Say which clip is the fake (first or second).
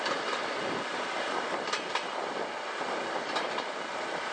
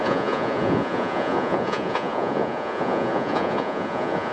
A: second